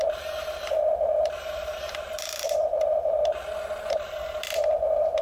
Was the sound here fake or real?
fake